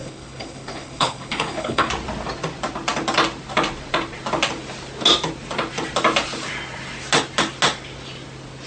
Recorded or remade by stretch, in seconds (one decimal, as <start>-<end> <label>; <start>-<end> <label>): 0.0-1.9 remade; 1.9-8.7 recorded